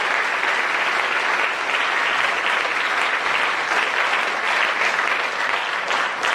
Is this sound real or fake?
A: real